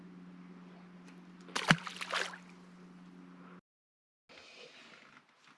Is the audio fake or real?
real